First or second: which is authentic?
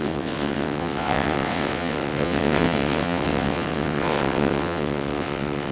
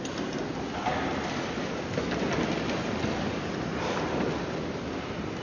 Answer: second